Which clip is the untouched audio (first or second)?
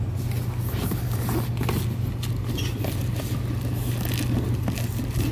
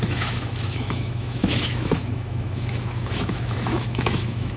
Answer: first